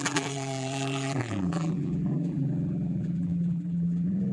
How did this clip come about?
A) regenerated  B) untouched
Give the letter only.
A